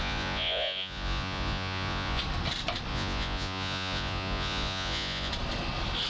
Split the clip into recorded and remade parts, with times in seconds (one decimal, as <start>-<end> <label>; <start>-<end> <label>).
0.0-2.2 remade; 2.2-2.9 recorded; 2.9-5.3 remade; 5.3-6.1 recorded